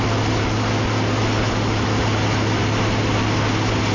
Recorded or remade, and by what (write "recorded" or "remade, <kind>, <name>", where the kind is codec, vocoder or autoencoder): recorded